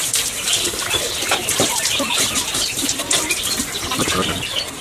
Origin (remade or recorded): remade